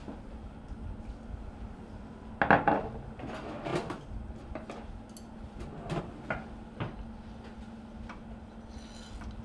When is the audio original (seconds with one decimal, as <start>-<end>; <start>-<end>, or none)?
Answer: 0.0-9.4